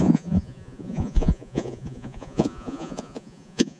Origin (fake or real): fake